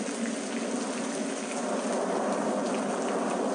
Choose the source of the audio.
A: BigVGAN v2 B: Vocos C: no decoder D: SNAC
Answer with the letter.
C